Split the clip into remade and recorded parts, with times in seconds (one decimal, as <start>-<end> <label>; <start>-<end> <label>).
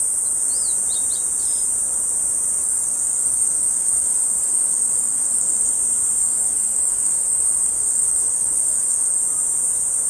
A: 0.0-2.6 recorded; 2.6-5.7 remade; 5.7-6.2 recorded; 6.2-9.2 remade; 9.2-10.1 recorded